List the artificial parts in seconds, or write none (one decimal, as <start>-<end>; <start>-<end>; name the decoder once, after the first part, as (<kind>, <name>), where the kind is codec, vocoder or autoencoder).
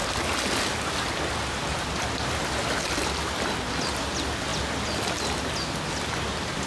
none